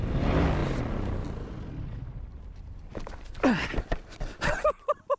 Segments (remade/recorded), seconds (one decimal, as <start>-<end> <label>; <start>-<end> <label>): 0.0-5.2 recorded